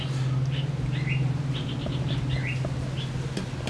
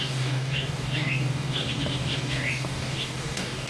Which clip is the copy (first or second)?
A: second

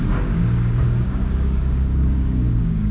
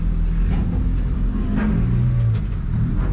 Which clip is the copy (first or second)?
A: first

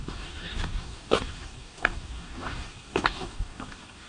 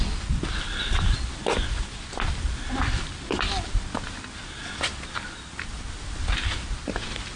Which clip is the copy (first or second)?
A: first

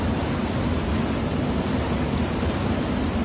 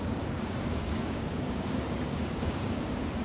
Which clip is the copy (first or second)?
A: second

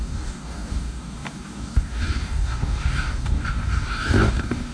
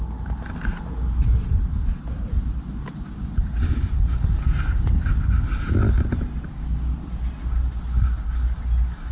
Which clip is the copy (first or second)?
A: first